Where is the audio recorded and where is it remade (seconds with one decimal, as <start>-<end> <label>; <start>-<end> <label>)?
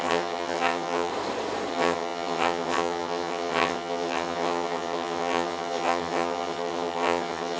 0.0-1.1 remade; 1.1-1.7 recorded; 1.7-7.6 remade